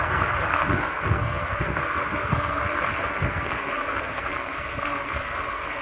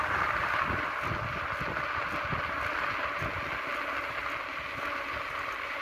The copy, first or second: first